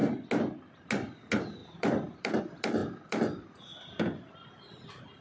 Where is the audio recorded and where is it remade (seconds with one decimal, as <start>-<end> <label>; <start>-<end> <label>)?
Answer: 0.0-1.6 recorded; 1.6-2.4 remade; 2.4-2.8 recorded; 2.8-4.5 remade; 4.5-5.2 recorded